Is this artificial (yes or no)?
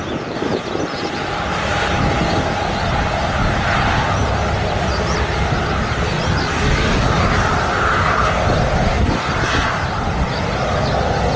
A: no